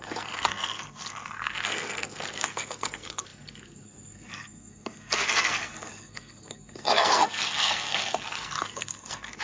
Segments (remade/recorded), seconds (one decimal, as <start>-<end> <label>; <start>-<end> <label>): 0.0-9.4 remade